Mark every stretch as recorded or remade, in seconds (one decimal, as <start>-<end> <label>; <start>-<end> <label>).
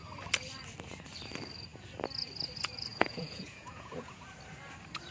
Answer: 0.0-2.9 recorded; 2.9-4.2 remade; 4.2-5.1 recorded